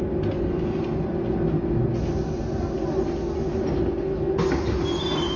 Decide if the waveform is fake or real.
real